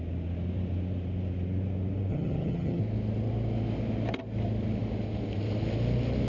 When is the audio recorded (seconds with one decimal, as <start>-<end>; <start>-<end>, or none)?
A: 0.0-2.1; 2.8-6.3